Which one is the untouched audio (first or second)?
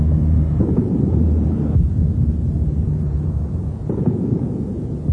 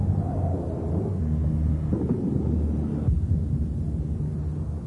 second